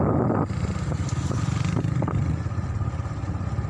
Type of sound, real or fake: real